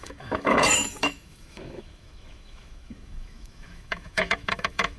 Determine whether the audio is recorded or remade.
remade